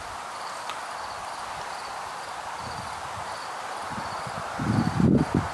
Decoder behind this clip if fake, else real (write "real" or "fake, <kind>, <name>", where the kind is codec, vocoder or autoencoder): real